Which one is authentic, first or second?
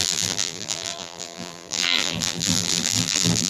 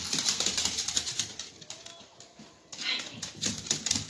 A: second